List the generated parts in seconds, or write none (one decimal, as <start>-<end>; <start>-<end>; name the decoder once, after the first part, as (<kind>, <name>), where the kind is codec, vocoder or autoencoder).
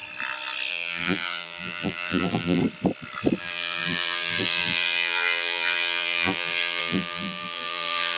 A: 0.7-2.6 (vocoder, BigVGAN v2); 3.4-8.2